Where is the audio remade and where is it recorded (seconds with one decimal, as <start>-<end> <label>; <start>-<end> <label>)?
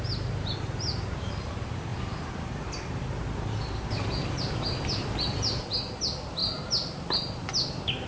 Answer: 0.0-8.1 recorded